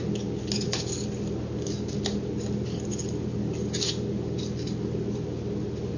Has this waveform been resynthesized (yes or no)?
no